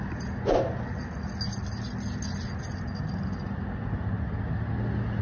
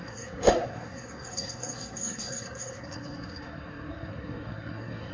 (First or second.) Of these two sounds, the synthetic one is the second